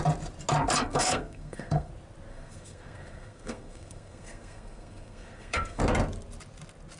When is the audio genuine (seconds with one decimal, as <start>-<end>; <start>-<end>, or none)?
0.0-0.9; 1.9-2.3; 5.8-7.0